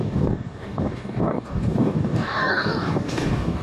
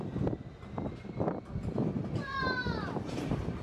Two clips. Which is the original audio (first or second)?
second